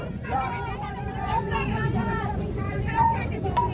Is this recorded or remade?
remade